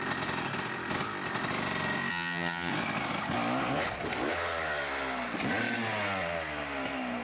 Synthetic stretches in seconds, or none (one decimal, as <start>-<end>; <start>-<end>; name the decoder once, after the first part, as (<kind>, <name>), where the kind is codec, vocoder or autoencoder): 2.1-2.7 (vocoder, HiFi-GAN)